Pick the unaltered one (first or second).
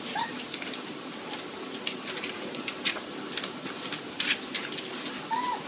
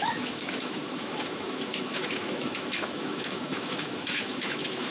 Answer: first